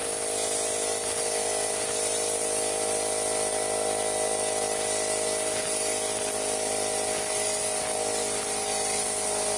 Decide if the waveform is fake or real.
real